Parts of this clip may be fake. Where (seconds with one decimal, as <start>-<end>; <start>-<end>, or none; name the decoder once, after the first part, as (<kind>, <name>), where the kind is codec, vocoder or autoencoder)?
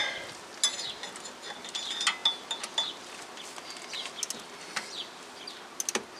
none